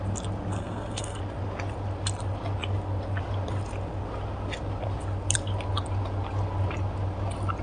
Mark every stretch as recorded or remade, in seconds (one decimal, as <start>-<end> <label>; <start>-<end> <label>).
0.0-0.5 recorded; 0.5-1.2 remade; 1.2-7.6 recorded